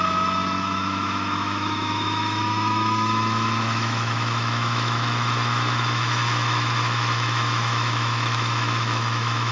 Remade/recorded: remade